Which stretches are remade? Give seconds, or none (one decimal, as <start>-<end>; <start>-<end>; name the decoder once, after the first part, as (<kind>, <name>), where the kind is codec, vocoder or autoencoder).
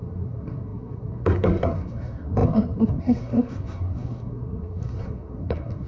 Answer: 0.0-5.9 (codec, SNAC)